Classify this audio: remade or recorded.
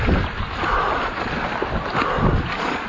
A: recorded